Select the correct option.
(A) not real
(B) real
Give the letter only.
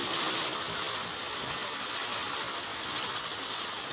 B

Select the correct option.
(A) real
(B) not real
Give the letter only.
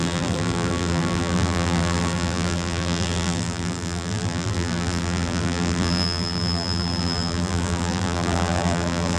B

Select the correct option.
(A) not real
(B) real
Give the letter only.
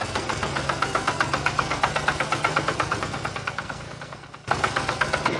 A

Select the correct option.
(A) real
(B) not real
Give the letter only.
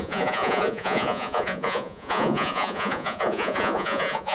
B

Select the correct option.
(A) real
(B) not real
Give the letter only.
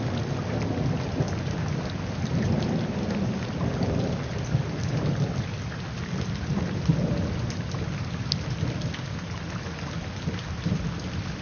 A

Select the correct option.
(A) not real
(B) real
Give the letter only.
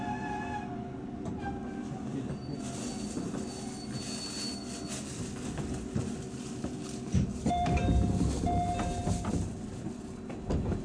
B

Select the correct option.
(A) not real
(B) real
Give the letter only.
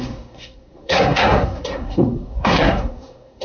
A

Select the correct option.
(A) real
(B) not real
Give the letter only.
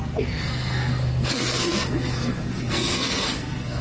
B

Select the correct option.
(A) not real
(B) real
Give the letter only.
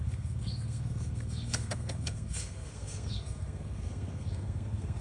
A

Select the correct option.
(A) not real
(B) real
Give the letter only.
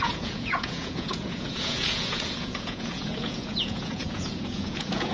A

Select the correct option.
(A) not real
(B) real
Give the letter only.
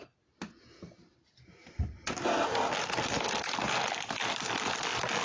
B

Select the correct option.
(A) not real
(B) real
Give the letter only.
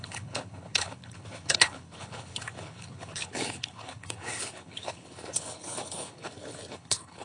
A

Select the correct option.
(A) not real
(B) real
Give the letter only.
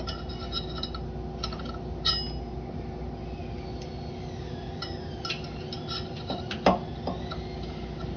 B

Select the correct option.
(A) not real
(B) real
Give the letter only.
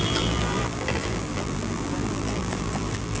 A